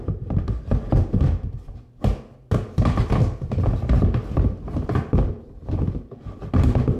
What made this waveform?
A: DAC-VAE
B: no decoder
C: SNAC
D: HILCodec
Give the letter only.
B